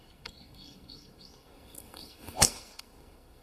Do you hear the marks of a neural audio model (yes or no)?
yes